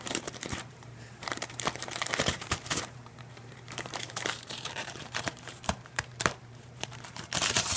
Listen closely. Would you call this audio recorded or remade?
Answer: remade